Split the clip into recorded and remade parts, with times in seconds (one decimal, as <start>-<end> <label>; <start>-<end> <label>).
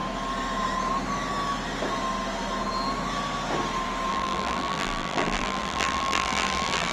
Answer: 0.0-4.1 recorded; 4.1-6.9 remade